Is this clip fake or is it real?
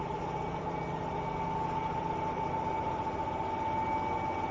real